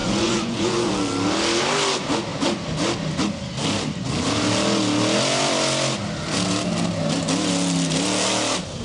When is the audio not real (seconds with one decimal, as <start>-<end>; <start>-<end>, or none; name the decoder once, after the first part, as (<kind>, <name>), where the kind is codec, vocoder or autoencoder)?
0.0-0.9 (vocoder, Vocos)